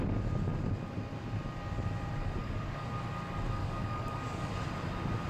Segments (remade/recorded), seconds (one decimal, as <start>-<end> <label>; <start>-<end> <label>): 0.0-2.4 recorded; 2.4-2.9 remade; 2.9-3.6 recorded; 3.6-4.5 remade; 4.5-5.3 recorded

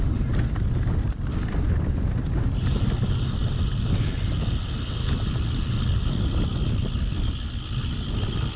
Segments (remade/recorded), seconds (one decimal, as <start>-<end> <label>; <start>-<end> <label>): 0.0-8.6 recorded